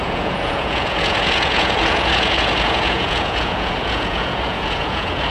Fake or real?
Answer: fake